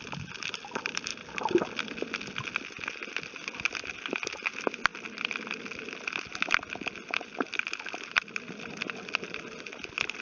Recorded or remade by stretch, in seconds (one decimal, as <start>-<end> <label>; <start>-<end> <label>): 0.0-10.2 recorded